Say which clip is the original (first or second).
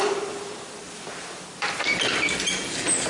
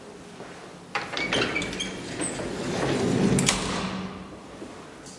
second